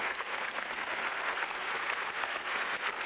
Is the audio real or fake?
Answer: fake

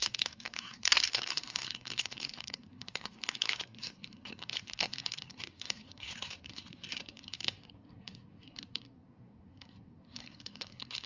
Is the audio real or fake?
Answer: fake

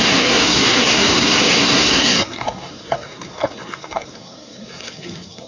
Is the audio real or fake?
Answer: fake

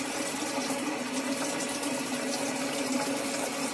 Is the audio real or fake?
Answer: real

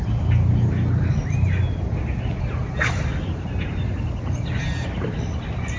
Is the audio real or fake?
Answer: real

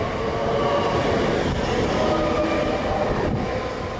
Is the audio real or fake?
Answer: real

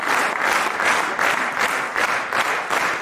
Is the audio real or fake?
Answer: real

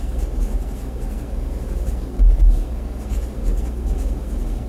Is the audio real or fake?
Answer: fake